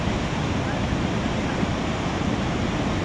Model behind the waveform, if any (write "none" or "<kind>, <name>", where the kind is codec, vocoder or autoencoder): none